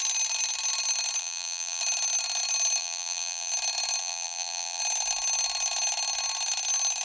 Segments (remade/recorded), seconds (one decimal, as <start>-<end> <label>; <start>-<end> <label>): 0.0-1.2 recorded; 1.2-1.8 remade; 1.8-2.8 recorded; 2.8-3.5 remade; 3.5-4.0 recorded; 4.0-4.8 remade; 4.8-7.0 recorded